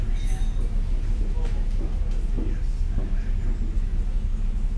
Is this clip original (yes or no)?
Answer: yes